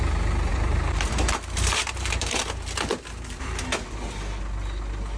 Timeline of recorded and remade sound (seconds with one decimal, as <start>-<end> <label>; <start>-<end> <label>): 0.0-0.5 recorded; 0.5-3.6 remade; 3.6-5.2 recorded